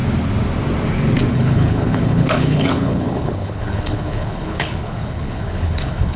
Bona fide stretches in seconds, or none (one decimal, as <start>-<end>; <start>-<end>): 0.0-1.3